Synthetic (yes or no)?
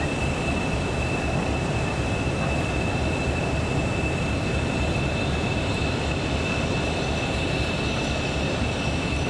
no